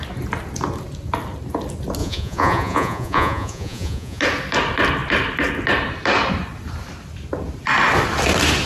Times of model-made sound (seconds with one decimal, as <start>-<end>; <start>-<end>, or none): 2.0-4.2